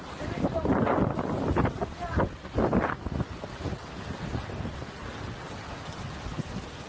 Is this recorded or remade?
recorded